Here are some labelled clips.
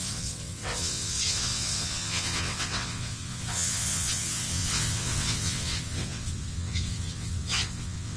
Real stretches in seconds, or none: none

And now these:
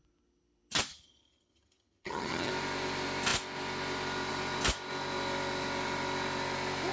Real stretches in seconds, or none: 0.0-0.9; 2.5-6.9

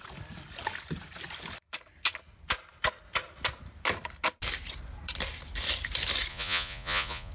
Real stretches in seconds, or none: 0.0-6.3

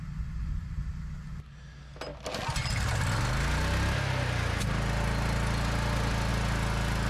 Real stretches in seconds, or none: 0.0-7.1

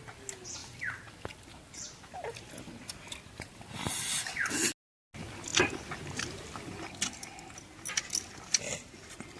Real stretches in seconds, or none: 0.0-9.4